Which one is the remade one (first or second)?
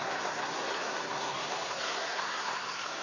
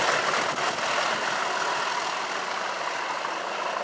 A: first